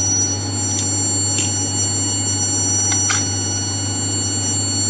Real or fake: real